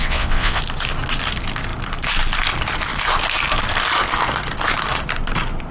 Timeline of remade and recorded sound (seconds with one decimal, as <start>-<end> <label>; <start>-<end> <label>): 0.0-0.6 remade; 0.6-5.7 recorded